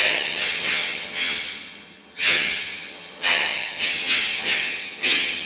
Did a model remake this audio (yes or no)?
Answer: yes